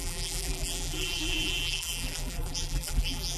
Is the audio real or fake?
fake